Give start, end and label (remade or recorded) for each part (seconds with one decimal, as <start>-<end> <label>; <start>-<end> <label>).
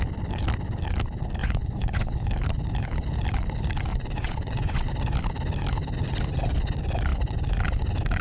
0.0-1.4 recorded; 1.4-2.2 remade; 2.2-3.9 recorded; 3.9-4.9 remade; 4.9-8.2 recorded